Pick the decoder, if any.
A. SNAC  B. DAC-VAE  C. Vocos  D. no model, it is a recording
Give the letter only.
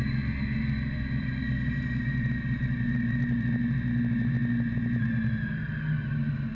D